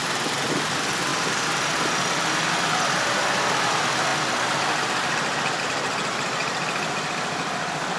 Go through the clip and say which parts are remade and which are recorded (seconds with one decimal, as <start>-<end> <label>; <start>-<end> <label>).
0.0-8.0 recorded